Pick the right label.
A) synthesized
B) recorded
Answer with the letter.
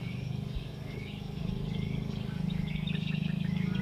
A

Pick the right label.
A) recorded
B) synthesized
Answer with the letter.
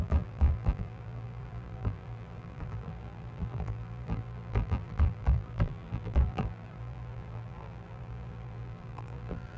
B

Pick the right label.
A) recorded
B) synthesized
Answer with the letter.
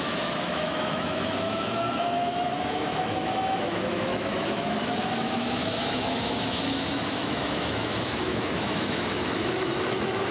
B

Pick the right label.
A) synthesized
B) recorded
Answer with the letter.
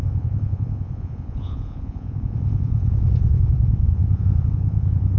A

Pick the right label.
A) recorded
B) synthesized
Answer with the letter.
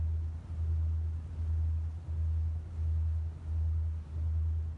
A